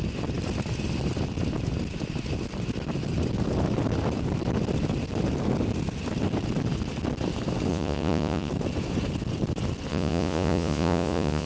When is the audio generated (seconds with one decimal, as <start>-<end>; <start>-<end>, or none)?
7.7-8.5; 9.9-11.5